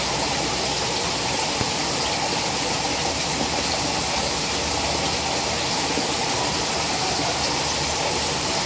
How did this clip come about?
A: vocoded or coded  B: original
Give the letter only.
B